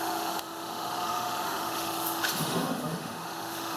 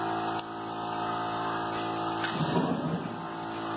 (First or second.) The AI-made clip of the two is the first